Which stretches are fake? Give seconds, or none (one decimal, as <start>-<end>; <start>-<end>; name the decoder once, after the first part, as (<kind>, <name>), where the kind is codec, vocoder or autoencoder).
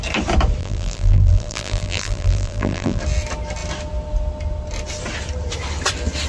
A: 0.6-3.0 (vocoder, BigVGAN v2)